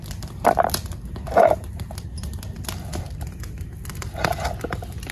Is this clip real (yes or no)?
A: yes